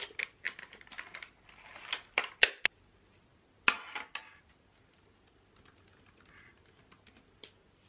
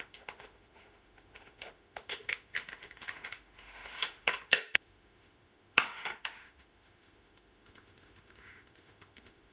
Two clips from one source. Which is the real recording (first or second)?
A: first